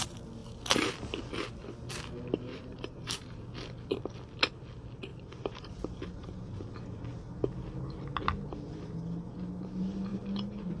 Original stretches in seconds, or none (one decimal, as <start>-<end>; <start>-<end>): 0.0-2.5; 3.4-5.1; 6.6-10.8